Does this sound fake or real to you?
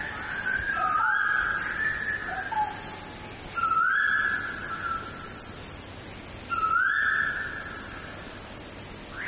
real